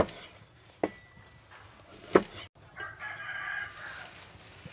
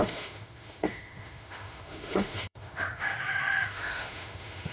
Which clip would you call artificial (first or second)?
second